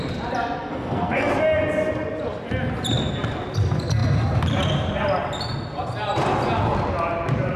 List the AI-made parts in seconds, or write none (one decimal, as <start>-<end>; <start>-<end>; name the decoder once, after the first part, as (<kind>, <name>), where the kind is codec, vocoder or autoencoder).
0.7-1.3 (codec, SNAC)